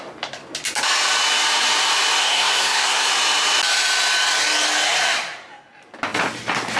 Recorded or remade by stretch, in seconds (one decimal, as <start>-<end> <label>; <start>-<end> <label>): 0.0-2.2 recorded; 2.2-3.1 remade; 3.1-6.8 recorded